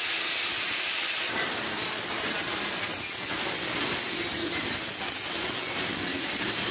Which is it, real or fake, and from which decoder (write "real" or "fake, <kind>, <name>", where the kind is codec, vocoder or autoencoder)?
real